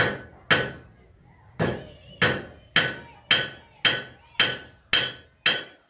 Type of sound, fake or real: real